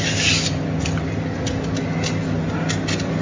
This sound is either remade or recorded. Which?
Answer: recorded